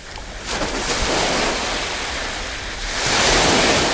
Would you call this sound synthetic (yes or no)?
no